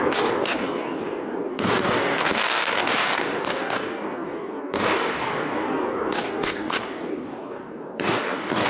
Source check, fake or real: fake